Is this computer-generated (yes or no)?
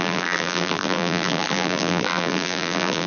yes